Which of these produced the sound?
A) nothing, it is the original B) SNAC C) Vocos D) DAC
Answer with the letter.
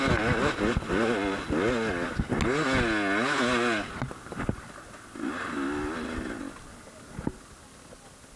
A